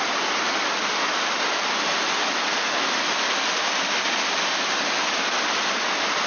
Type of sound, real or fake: real